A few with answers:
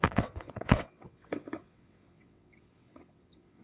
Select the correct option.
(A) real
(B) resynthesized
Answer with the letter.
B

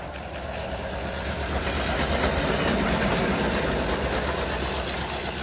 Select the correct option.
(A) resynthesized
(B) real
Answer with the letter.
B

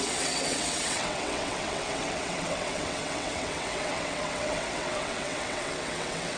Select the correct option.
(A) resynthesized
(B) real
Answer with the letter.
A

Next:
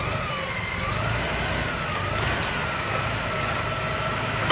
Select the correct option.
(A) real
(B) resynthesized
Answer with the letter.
A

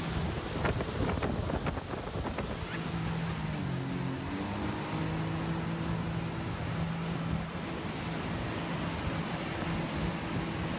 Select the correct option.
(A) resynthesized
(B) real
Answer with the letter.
B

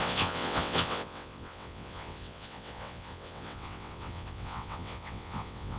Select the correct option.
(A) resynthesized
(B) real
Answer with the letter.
A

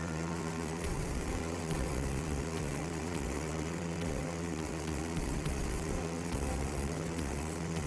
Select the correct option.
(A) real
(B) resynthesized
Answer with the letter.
B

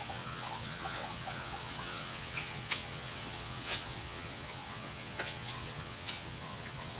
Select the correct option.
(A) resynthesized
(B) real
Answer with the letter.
A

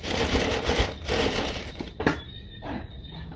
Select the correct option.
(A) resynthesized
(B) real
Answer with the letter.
B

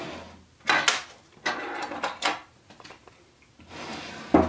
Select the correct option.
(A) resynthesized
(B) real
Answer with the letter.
B